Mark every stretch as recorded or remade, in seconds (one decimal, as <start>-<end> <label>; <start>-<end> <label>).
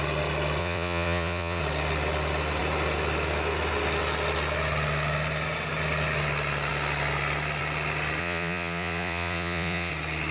0.0-0.6 recorded; 0.6-1.6 remade; 1.6-8.2 recorded; 8.2-9.9 remade; 9.9-10.3 recorded